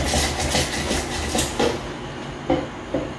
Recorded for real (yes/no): yes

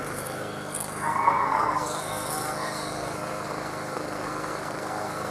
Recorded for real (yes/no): no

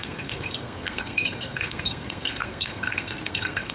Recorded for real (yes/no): no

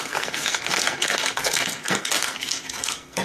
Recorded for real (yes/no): no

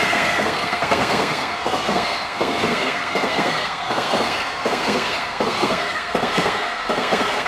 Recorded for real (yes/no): no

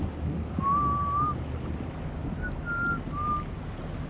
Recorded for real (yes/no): yes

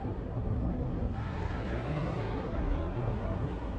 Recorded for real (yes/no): no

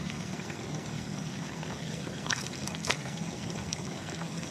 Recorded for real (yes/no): no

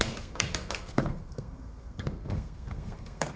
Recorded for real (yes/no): no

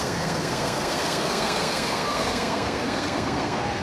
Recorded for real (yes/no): no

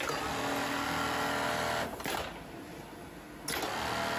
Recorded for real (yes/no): yes